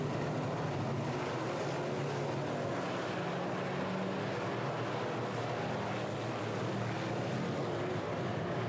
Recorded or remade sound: recorded